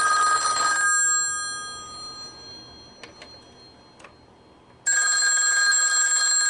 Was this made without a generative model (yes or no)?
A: yes